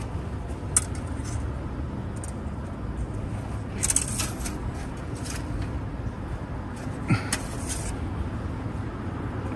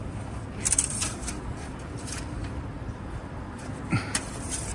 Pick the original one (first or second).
first